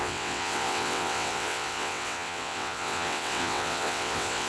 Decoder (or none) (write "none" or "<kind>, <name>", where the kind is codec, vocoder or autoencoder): vocoder, WaveNeXt